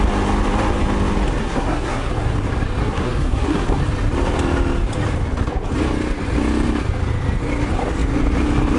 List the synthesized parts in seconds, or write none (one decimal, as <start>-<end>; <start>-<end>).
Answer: 1.4-2.1; 2.8-3.8